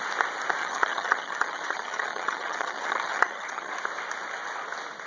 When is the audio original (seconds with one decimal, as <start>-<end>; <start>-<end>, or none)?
0.0-0.6; 3.7-5.1